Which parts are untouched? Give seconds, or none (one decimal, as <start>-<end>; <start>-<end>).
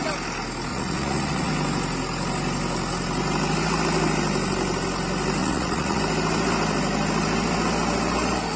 0.0-0.7; 1.5-5.4; 6.0-8.6